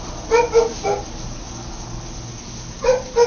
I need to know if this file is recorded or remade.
recorded